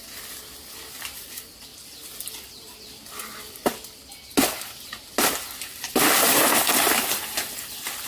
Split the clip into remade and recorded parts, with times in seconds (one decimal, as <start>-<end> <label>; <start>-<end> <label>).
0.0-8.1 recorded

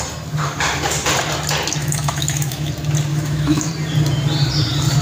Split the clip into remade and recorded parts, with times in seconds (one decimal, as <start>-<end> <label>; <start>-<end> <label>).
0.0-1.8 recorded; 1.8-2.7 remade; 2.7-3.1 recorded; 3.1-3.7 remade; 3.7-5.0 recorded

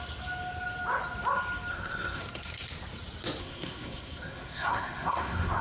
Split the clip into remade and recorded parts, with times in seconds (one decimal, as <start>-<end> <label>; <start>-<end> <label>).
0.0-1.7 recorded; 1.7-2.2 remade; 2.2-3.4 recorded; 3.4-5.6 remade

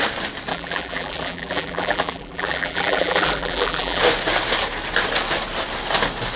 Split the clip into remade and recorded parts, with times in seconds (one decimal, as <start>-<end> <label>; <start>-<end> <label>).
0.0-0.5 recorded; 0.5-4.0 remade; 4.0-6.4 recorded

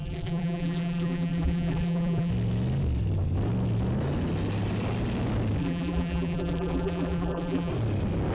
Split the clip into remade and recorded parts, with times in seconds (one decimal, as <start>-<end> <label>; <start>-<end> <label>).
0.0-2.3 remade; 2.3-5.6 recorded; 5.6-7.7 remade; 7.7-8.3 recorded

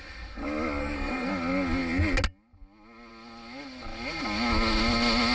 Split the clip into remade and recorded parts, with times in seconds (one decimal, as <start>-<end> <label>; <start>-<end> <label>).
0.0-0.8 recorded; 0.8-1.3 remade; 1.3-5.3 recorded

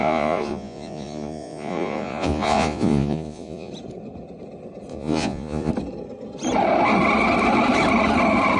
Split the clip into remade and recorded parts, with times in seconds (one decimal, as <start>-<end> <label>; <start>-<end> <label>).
0.0-3.7 remade; 3.7-4.9 recorded; 4.9-5.7 remade; 5.7-8.6 recorded